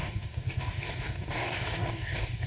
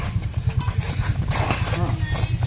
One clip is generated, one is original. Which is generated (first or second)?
first